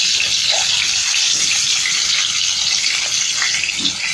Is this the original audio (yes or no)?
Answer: yes